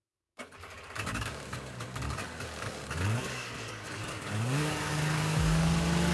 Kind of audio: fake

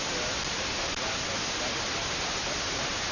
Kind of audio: real